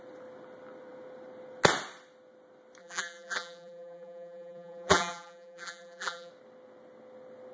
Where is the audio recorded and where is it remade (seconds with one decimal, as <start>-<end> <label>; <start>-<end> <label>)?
0.0-2.8 recorded; 2.8-6.3 remade; 6.3-7.5 recorded